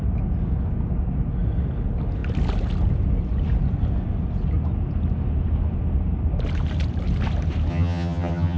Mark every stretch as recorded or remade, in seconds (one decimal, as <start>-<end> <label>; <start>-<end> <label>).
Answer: 0.0-7.7 recorded; 7.7-8.6 remade